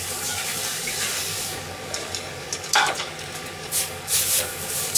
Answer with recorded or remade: remade